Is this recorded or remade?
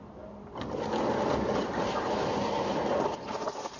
recorded